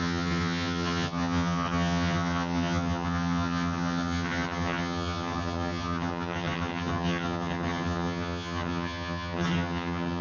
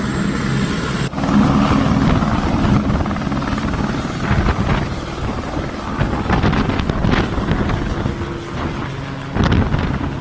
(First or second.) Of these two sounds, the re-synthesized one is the first